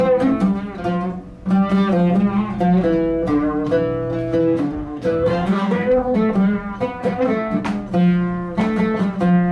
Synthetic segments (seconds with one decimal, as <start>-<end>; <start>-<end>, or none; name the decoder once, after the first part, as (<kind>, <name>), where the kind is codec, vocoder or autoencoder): 4.4-6.2 (codec, DAC); 7.0-7.6